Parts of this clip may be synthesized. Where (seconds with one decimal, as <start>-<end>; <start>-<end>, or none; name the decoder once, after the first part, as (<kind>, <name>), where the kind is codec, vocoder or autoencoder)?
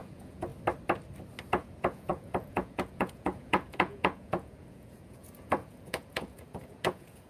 0.0-0.5 (vocoder, Vocos); 1.5-7.3